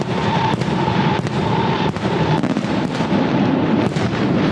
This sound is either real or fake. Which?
fake